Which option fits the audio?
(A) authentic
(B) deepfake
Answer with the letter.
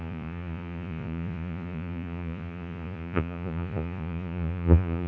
B